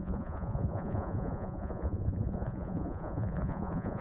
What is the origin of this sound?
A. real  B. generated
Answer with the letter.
B